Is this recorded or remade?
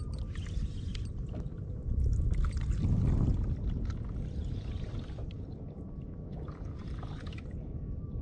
remade